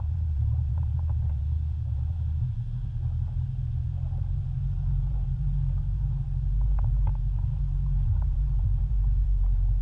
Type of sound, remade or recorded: remade